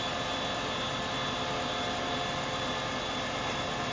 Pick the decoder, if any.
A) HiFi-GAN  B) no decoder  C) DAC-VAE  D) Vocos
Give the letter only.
B